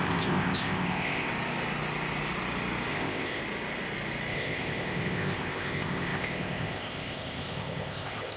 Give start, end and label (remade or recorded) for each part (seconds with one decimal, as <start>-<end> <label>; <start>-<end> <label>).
0.0-1.3 remade; 1.3-2.9 recorded; 2.9-3.4 remade; 3.4-4.3 recorded; 4.3-8.4 remade